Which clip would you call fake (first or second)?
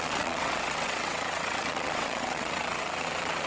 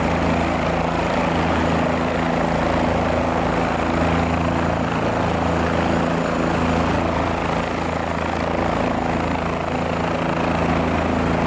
first